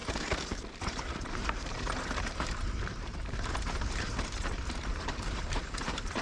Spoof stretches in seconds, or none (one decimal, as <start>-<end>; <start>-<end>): 0.8-6.2